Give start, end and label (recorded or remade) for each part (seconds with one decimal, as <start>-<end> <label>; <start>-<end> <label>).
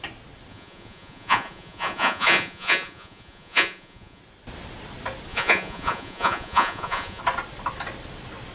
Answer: 0.0-0.5 recorded; 0.5-4.2 remade; 4.2-5.3 recorded; 5.3-7.2 remade; 7.2-8.5 recorded